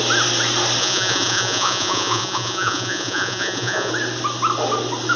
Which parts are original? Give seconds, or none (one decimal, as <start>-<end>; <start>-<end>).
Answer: 0.0-0.8; 3.9-5.2